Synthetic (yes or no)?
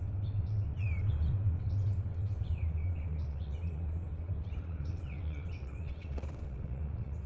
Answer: yes